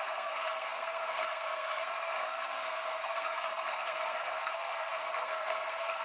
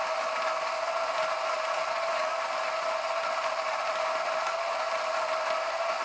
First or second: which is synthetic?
first